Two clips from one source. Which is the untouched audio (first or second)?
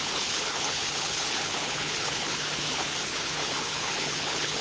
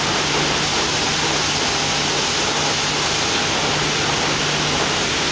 second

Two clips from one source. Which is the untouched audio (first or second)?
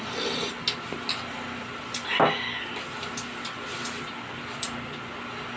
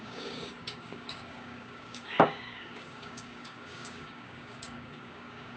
first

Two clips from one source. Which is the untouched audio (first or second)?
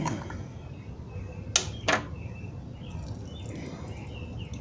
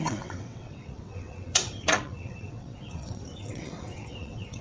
first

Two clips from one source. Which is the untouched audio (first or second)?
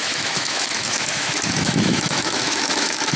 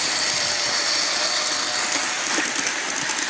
second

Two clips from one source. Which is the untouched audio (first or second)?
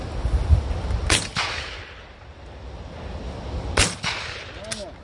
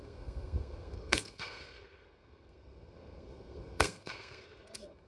first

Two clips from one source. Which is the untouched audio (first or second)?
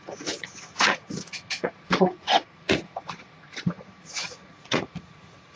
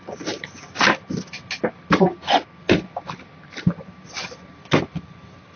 second